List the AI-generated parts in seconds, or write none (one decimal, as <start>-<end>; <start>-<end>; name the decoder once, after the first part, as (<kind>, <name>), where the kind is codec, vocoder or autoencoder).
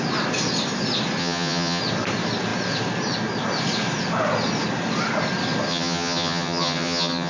1.2-1.8 (vocoder, HiFi-GAN); 5.7-7.3